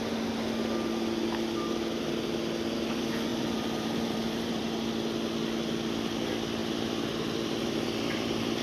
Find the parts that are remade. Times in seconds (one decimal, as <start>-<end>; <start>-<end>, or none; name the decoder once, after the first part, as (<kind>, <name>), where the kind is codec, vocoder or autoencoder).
3.3-4.6 (vocoder, BigVGAN v2); 6.6-8.6